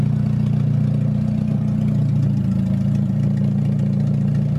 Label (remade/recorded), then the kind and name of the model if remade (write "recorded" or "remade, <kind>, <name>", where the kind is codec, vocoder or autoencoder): recorded